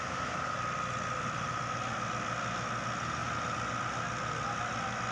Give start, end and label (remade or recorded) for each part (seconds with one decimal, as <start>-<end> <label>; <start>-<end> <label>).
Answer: 0.0-5.1 recorded